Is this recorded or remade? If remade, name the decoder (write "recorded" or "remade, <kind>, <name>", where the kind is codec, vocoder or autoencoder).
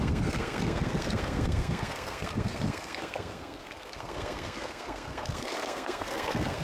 remade, codec, SNAC